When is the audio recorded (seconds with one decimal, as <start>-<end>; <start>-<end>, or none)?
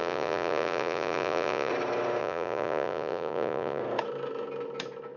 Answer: 1.7-2.2; 3.8-5.2